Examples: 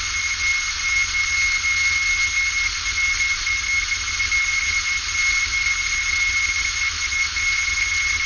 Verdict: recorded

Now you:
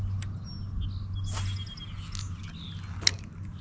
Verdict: recorded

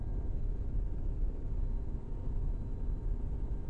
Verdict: recorded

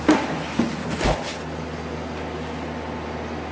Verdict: recorded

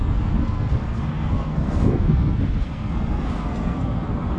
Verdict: remade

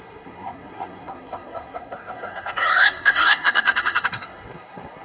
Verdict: remade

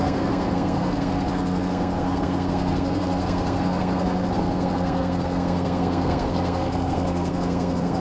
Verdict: remade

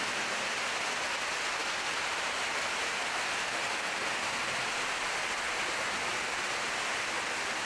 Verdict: recorded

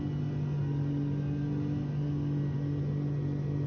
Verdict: recorded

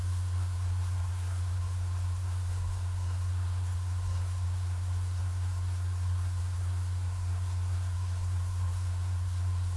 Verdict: remade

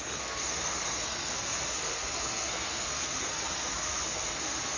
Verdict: remade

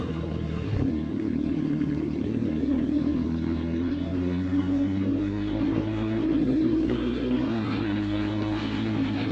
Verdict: remade